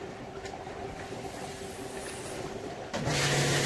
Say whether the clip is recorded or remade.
recorded